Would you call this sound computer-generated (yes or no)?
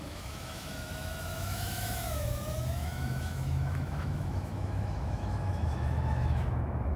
yes